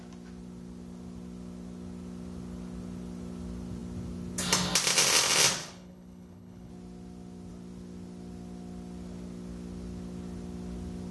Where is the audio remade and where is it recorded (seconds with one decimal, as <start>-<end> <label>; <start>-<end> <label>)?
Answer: 0.0-5.6 recorded; 5.6-6.7 remade; 6.7-11.1 recorded